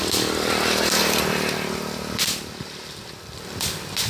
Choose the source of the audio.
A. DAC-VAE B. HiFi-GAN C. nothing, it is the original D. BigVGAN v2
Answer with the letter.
C